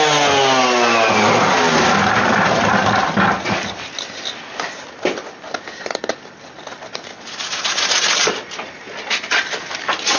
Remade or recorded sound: recorded